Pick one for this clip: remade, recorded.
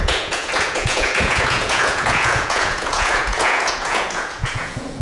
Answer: remade